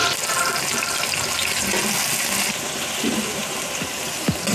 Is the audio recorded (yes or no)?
yes